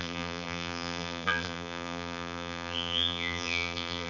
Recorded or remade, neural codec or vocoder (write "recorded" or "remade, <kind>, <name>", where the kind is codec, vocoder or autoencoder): remade, vocoder, BigVGAN v2